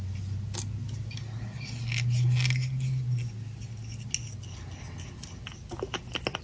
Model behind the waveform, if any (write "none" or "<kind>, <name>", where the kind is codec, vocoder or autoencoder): none